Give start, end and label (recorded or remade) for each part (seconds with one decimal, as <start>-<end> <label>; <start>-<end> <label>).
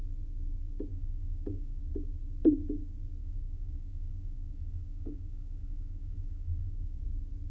0.0-0.9 recorded; 0.9-1.8 remade; 1.8-3.2 recorded; 3.2-7.0 remade; 7.0-7.5 recorded